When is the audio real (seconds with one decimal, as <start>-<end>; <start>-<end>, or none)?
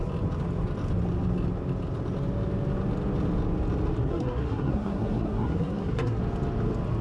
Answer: 0.0-4.0; 6.2-7.0